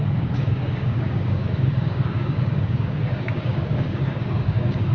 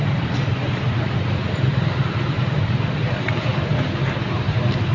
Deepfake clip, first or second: first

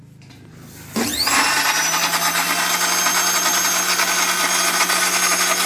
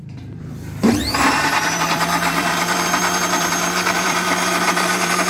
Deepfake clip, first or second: second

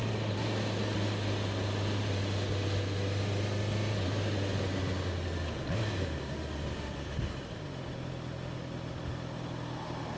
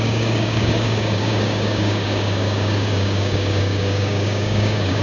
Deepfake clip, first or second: second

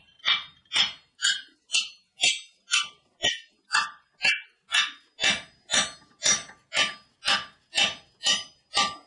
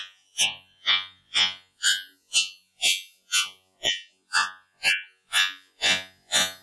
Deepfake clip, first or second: second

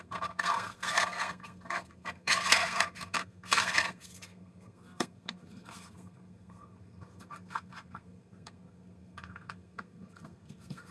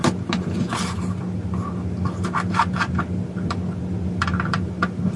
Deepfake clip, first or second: first